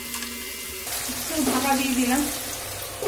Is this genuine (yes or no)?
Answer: yes